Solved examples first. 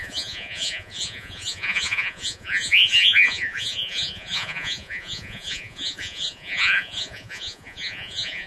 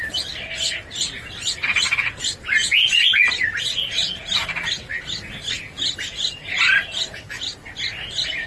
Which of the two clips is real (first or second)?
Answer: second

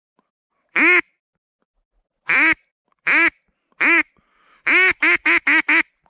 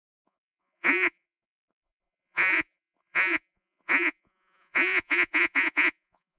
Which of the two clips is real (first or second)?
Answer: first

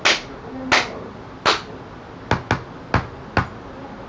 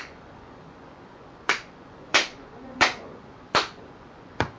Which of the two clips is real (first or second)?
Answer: first